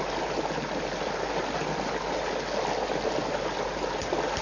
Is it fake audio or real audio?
real